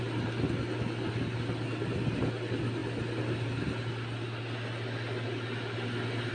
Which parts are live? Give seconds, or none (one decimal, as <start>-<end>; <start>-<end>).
0.0-6.3